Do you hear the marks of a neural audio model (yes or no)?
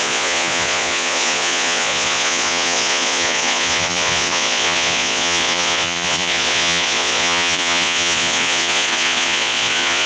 yes